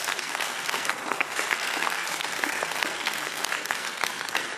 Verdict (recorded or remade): remade